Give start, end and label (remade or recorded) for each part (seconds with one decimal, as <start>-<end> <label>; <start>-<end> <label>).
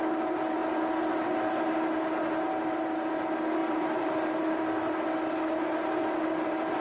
0.0-3.6 recorded; 3.6-4.3 remade; 4.3-6.8 recorded